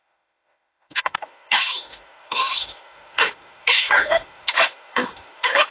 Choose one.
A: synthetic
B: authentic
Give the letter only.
A